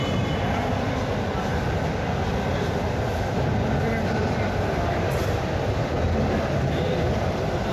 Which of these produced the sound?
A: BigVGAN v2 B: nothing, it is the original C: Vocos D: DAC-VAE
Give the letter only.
B